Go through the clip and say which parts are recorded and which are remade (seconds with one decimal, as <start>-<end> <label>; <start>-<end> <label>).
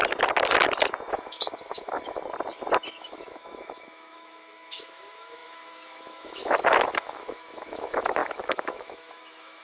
0.0-1.1 recorded; 1.1-2.2 remade; 2.2-3.0 recorded; 3.0-9.6 remade